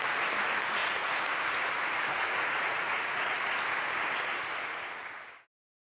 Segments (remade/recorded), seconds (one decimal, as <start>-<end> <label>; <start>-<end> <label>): 0.0-0.8 recorded; 0.8-3.4 remade; 3.4-5.9 recorded